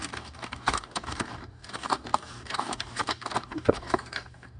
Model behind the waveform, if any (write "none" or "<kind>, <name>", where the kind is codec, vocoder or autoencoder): codec, DAC